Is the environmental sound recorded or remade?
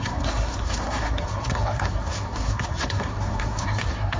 remade